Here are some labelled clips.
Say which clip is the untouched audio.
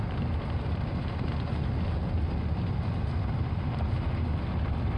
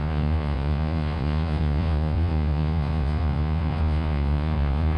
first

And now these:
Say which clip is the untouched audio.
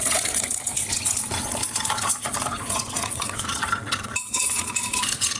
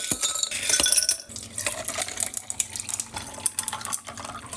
second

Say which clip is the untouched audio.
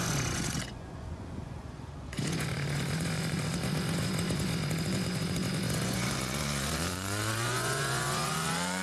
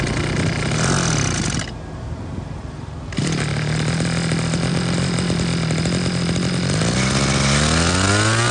second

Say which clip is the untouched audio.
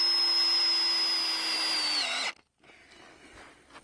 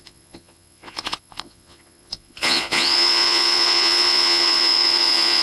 first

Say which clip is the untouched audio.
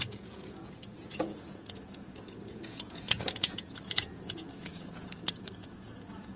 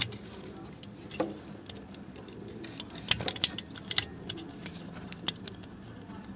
second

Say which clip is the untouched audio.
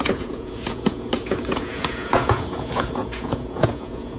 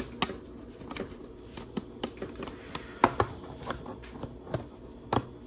second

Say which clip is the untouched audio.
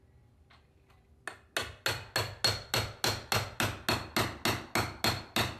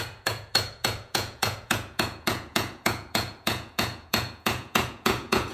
first